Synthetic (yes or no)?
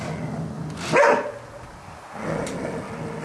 no